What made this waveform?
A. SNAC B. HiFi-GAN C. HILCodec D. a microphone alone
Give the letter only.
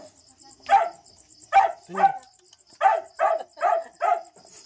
D